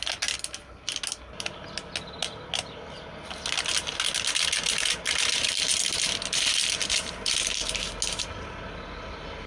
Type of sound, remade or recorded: recorded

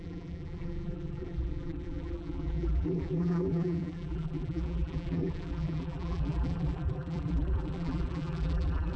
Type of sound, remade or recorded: remade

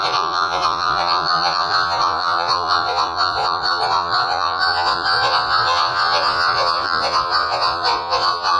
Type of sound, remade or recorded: remade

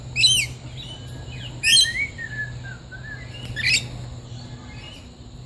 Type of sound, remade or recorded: recorded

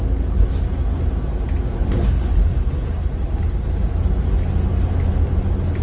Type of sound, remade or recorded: recorded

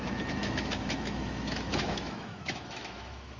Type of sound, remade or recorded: remade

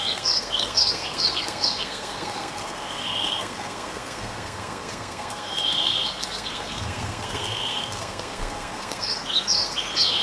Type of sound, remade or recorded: remade